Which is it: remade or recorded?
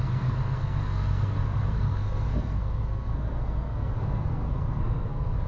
remade